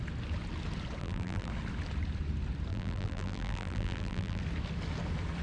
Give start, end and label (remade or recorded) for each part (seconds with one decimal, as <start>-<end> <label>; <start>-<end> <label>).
0.0-1.0 recorded; 1.0-1.5 remade; 1.5-2.7 recorded; 2.7-4.4 remade; 4.4-5.4 recorded